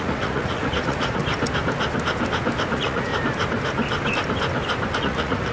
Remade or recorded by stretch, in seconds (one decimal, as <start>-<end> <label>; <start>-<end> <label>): 0.0-1.2 remade; 1.2-2.7 recorded; 2.7-3.1 remade; 3.1-5.0 recorded; 5.0-5.5 remade